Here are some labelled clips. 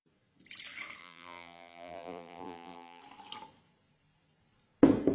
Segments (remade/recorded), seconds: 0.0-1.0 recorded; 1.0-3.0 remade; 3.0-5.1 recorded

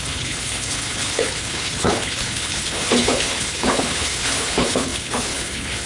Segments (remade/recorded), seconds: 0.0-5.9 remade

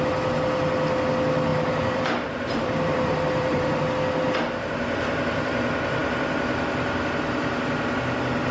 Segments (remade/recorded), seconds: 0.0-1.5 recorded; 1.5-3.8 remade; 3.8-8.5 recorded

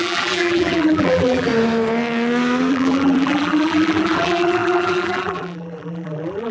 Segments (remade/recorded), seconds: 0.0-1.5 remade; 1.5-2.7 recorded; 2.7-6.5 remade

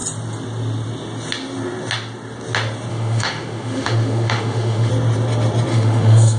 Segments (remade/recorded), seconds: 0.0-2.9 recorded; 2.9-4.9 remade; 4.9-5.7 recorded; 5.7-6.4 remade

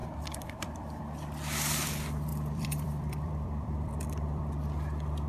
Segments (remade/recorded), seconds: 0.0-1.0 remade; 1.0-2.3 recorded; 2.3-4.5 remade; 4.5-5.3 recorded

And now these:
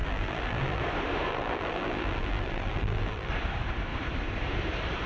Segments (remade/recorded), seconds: 0.0-0.8 remade; 0.8-1.3 recorded; 1.3-3.3 remade; 3.3-5.1 recorded

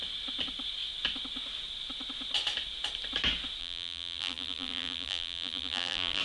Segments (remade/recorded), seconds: 0.0-3.6 recorded; 3.6-6.2 remade